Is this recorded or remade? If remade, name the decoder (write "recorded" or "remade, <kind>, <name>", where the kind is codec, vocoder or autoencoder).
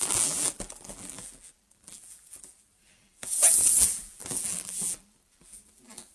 remade, vocoder, BigVGAN v2